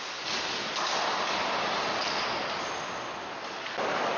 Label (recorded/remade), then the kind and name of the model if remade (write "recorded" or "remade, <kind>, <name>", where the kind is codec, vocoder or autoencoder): recorded